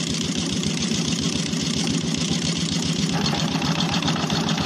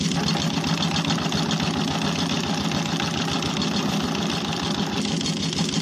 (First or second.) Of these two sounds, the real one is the second